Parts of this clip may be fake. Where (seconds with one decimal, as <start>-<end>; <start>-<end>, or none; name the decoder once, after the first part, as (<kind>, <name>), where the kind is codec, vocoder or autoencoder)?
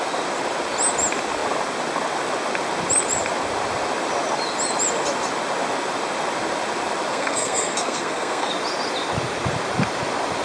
7.1-8.5 (codec, SNAC)